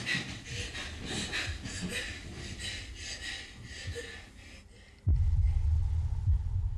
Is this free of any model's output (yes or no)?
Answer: yes